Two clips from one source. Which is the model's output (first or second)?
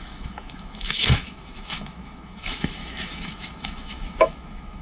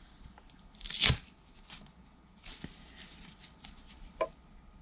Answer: first